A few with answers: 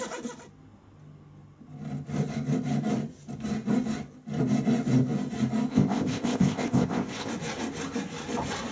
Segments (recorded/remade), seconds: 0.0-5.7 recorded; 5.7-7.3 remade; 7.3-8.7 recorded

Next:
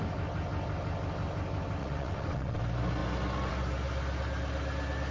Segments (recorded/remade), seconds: 0.0-1.8 recorded; 1.8-2.6 remade; 2.6-5.1 recorded